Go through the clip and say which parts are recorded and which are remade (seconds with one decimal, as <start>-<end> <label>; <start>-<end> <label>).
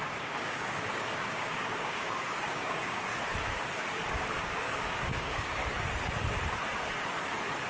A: 0.0-3.1 remade; 3.1-4.1 recorded; 4.1-5.6 remade; 5.6-7.7 recorded